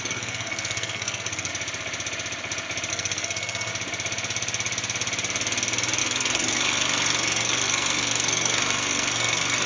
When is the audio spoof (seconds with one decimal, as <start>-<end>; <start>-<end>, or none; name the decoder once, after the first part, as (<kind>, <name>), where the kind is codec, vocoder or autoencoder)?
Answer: 0.0-1.5 (codec, SNAC); 2.9-3.7; 6.0-9.7